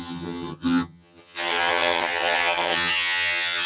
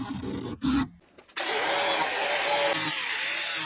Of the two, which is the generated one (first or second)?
first